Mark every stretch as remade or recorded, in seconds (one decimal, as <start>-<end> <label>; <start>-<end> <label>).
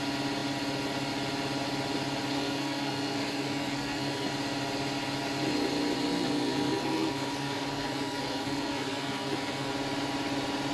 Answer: 0.0-2.3 recorded; 2.3-4.3 remade; 4.3-6.1 recorded; 6.1-9.7 remade; 9.7-10.7 recorded